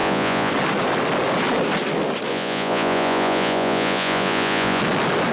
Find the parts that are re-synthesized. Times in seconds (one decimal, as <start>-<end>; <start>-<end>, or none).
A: 0.0-0.5; 2.3-4.8